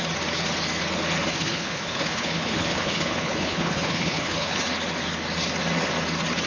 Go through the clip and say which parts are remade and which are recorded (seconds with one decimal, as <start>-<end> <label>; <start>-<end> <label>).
0.0-1.3 recorded; 1.3-4.6 remade; 4.6-6.5 recorded